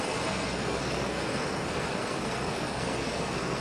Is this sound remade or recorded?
remade